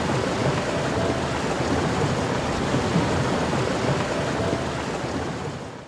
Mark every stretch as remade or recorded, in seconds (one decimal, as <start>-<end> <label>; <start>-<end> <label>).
0.0-5.9 recorded